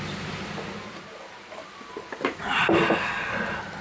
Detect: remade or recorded recorded